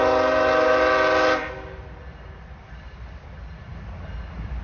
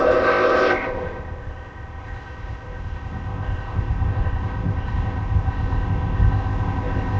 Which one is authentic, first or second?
first